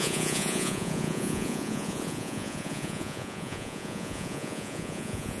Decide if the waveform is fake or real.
fake